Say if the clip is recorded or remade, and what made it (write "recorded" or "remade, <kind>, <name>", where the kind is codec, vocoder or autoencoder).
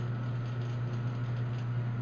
recorded